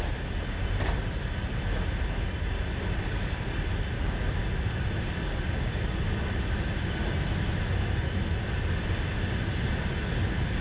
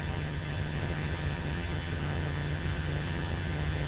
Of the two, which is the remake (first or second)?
second